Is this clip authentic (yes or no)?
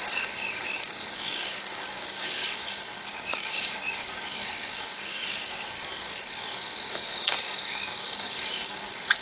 no